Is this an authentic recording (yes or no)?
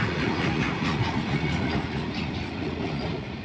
no